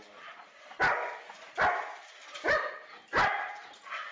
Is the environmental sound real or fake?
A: real